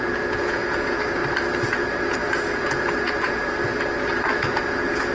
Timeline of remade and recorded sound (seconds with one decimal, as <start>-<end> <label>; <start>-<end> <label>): 0.0-1.2 remade; 1.2-1.7 recorded; 1.7-3.4 remade; 3.4-4.1 recorded; 4.1-5.1 remade